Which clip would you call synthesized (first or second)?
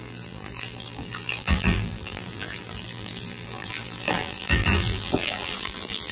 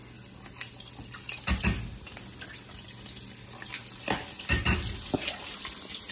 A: first